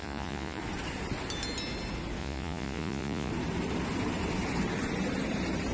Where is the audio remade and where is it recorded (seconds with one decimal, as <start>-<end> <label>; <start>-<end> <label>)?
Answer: 0.0-0.6 remade; 0.6-2.2 recorded; 2.2-3.3 remade; 3.3-5.7 recorded